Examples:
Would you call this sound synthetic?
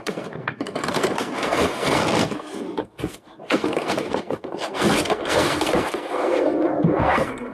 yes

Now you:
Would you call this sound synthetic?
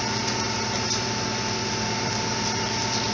no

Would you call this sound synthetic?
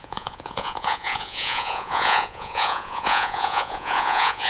yes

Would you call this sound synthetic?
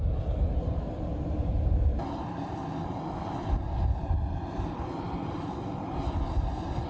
no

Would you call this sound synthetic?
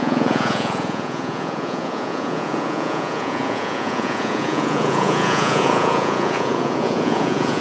yes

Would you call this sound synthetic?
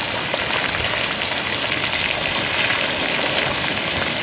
yes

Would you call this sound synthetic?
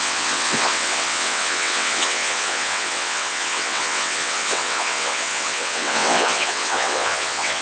yes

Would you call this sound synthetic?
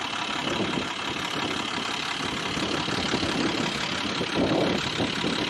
yes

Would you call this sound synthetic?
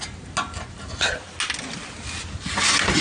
no